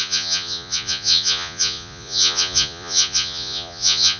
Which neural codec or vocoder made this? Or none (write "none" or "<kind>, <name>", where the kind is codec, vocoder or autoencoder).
vocoder, Vocos